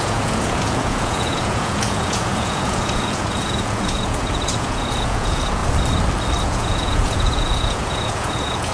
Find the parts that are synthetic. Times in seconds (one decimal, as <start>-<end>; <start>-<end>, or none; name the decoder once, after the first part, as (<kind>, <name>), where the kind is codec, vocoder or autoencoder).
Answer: 0.0-5.6 (vocoder, Vocos); 6.4-8.7